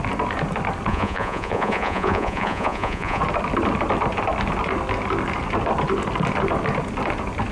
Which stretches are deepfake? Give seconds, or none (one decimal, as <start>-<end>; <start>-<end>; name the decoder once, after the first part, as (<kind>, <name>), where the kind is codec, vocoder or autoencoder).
0.9-3.2 (vocoder, Vocos)